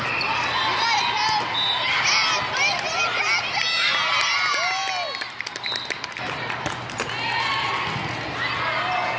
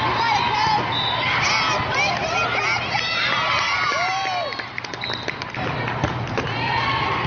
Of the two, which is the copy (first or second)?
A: second